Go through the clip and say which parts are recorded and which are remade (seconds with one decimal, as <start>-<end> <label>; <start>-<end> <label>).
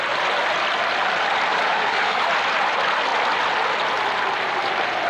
0.0-1.5 recorded; 1.5-2.2 remade; 2.2-5.1 recorded